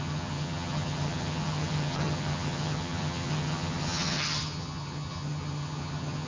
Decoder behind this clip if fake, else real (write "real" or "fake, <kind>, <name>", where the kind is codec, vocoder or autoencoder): fake, vocoder, HiFi-GAN